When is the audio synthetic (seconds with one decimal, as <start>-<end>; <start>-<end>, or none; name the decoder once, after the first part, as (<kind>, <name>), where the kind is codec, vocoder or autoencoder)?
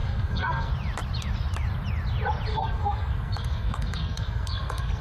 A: 0.0-0.7 (codec, SNAC); 2.5-5.0